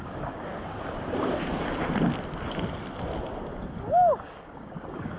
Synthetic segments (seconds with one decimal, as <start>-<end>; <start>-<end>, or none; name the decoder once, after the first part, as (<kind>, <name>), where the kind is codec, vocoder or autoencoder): 0.0-0.5 (codec, DAC); 3.6-5.2